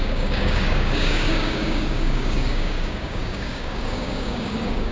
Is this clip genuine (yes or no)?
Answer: no